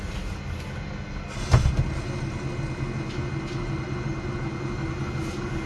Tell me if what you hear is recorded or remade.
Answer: recorded